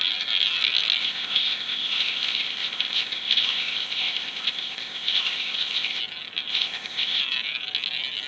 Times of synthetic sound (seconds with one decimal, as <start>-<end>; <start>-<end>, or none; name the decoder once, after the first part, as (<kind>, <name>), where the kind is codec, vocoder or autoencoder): 1.0-6.0 (codec, ZipCodec); 6.5-7.2